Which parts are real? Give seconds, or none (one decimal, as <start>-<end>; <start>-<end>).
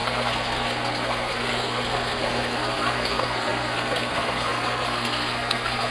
none